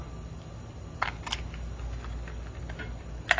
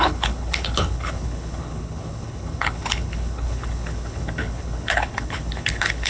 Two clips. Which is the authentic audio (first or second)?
first